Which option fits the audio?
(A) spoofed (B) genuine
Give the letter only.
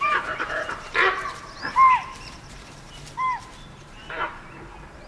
A